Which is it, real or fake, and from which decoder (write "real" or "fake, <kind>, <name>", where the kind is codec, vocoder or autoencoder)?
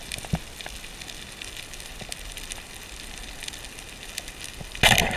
real